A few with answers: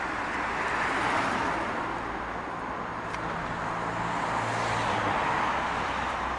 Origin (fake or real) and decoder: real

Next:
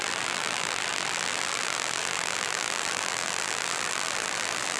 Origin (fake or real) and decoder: fake, vocoder, BigVGAN v2